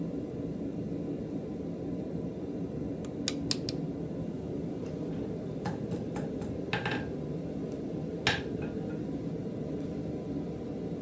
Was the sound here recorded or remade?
recorded